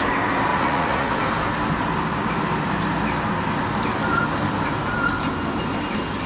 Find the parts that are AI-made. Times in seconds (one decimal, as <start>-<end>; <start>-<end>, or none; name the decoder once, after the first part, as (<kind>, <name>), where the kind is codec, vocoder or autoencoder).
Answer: 0.5-1.1 (vocoder, Vocos)